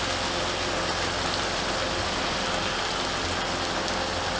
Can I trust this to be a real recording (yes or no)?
yes